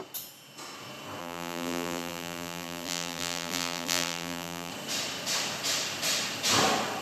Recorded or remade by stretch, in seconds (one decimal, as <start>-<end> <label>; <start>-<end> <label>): 0.0-1.2 recorded; 1.2-4.7 remade; 4.7-7.0 recorded

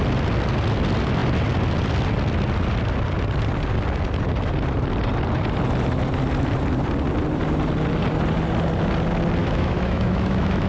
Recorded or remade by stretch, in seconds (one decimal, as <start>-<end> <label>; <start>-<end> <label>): 0.0-9.4 recorded; 9.4-10.7 remade

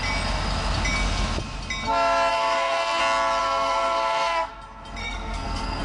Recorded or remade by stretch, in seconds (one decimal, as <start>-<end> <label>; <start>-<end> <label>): 0.0-2.3 recorded; 2.3-3.0 remade; 3.0-3.4 recorded; 3.4-4.5 remade; 4.5-5.0 recorded; 5.0-5.8 remade

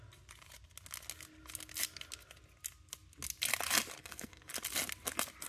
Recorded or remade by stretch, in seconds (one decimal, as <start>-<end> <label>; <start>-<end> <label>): 0.0-4.0 recorded; 4.0-4.5 remade; 4.5-5.5 recorded

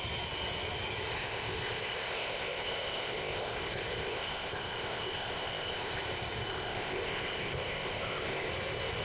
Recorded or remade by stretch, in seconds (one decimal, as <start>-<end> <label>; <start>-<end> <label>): 0.0-1.1 recorded; 1.1-6.0 remade; 6.0-6.5 recorded; 6.5-8.5 remade; 8.5-9.0 recorded

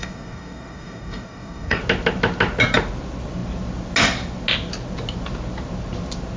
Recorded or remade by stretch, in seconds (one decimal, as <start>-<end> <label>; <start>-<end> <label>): 0.0-1.8 remade; 1.8-6.4 recorded